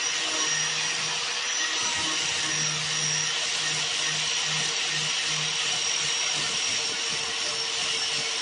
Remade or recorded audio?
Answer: recorded